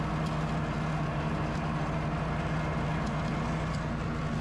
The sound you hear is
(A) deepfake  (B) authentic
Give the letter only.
B